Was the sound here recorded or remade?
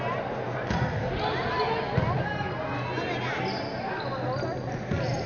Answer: recorded